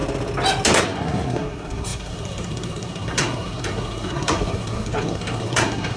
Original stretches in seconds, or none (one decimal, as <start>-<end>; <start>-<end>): 0.0-0.8